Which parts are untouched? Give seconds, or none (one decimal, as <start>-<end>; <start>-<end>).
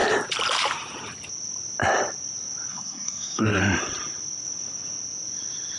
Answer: 0.0-2.7; 3.6-5.8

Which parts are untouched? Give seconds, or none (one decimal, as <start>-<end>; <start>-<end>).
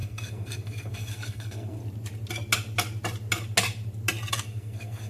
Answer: 1.8-4.3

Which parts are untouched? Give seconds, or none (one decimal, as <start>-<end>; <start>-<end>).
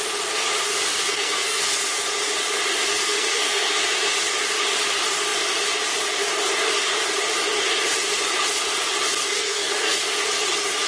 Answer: 0.0-1.1; 1.6-2.9; 3.7-9.2; 10.0-10.9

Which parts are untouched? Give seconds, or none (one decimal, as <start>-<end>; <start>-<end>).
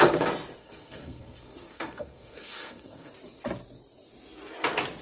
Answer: 0.0-0.6; 3.1-5.0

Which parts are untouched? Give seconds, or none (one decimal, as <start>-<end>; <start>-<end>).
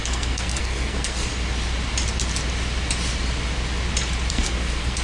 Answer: 1.3-4.3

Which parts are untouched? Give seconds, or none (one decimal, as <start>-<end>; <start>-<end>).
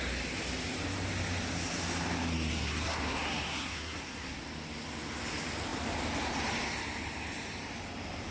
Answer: 0.0-2.5; 4.4-8.3